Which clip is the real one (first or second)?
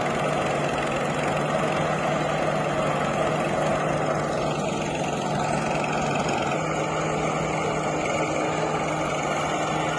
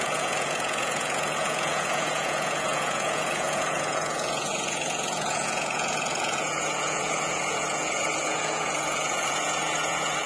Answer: first